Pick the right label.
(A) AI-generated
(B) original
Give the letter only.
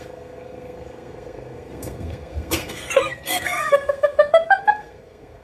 A